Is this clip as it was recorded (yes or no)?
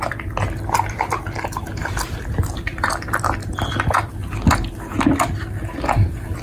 yes